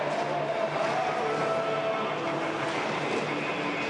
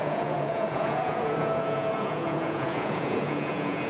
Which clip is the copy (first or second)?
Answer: second